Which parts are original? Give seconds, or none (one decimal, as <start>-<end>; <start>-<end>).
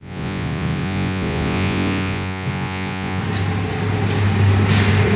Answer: 3.2-5.2